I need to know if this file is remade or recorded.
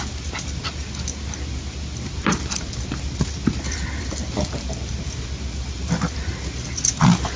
recorded